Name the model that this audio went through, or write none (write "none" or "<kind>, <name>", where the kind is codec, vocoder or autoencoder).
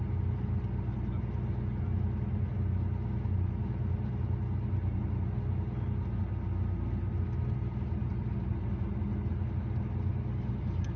none